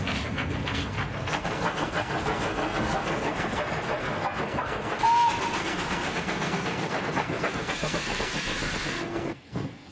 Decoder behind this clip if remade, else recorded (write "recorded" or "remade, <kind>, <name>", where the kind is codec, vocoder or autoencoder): remade, codec, SNAC